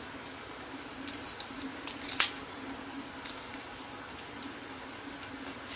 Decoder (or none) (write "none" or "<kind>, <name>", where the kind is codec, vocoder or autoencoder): none